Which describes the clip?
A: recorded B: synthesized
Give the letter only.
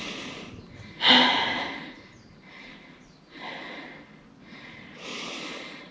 A